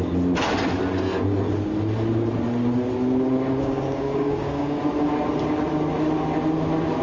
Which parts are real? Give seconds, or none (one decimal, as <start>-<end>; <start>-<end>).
0.0-3.6; 4.8-7.0